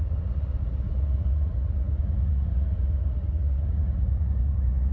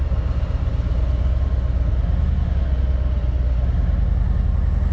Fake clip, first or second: first